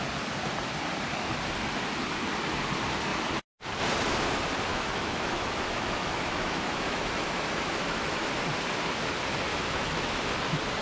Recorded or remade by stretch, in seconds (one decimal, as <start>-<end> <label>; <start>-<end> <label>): 0.0-4.7 recorded; 4.7-8.3 remade; 8.3-9.5 recorded; 9.5-10.2 remade; 10.2-10.8 recorded